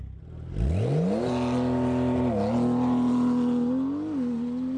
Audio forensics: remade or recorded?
recorded